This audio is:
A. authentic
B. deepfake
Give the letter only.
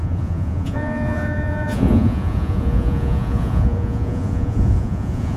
B